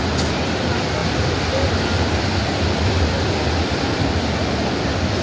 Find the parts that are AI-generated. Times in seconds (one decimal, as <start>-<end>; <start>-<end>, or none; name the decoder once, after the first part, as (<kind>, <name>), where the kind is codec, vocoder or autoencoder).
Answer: none